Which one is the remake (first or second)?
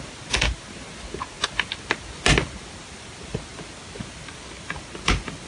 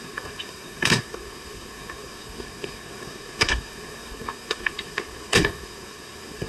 second